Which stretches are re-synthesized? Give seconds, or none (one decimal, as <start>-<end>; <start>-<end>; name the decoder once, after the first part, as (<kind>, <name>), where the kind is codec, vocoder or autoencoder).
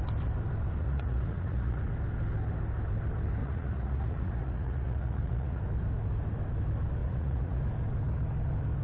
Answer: 0.8-1.8 (vocoder, Vocos); 3.4-5.6; 7.0-7.6